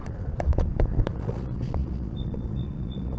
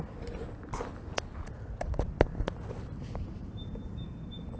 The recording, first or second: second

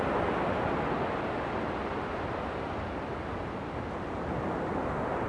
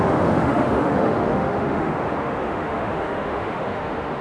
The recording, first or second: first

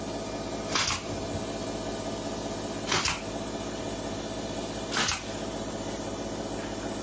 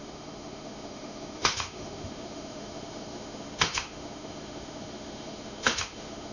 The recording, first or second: first